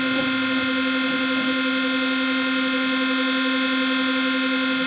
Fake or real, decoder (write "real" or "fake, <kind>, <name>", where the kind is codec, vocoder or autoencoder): real